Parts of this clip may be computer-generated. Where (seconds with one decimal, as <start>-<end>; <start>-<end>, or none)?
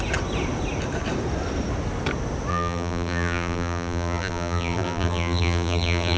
2.5-6.2